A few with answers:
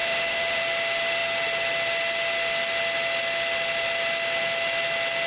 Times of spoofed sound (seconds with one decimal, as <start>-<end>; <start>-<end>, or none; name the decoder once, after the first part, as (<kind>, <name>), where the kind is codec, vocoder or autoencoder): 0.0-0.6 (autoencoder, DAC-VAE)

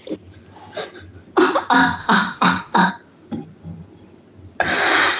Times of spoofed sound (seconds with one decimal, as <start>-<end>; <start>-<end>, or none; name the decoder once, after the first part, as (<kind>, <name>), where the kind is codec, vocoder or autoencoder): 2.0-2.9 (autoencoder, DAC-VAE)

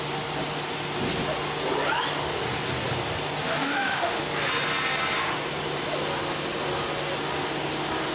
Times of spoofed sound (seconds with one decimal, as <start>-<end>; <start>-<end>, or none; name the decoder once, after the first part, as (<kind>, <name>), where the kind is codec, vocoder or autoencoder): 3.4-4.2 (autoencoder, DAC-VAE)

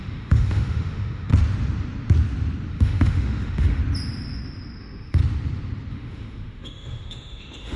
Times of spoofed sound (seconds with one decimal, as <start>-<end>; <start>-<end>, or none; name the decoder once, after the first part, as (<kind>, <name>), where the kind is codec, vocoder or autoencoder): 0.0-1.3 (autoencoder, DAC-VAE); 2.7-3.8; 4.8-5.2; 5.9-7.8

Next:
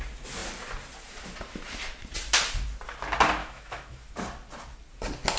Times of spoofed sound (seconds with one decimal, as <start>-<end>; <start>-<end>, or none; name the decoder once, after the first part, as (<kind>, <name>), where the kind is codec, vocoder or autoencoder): 3.4-4.1 (autoencoder, DAC-VAE)